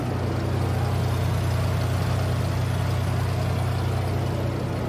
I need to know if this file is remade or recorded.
recorded